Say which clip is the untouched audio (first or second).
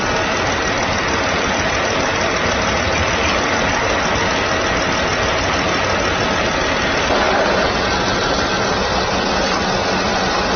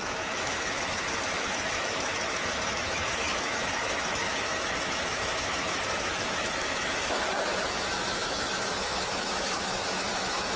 first